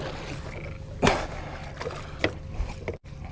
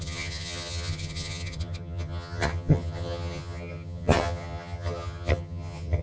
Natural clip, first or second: first